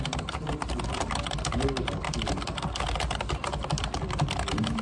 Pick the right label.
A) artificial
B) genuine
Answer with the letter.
B